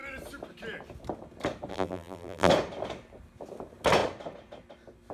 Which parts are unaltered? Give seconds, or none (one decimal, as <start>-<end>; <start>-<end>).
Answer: 0.0-1.7; 2.5-5.1